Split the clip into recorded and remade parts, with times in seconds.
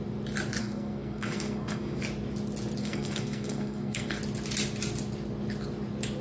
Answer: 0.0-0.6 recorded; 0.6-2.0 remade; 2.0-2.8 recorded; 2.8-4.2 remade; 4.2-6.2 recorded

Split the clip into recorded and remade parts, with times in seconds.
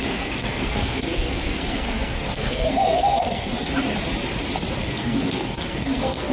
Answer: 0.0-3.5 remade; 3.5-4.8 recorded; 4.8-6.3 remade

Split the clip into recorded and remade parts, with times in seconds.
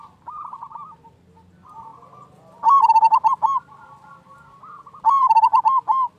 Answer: 0.0-6.2 recorded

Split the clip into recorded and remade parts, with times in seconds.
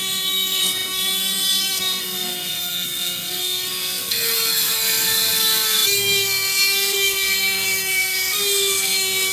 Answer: 0.0-9.3 remade